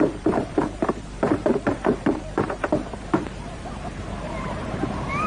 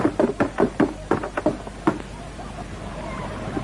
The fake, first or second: first